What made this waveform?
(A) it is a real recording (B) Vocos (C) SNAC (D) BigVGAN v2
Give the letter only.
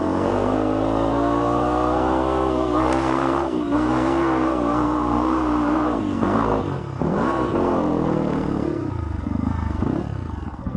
C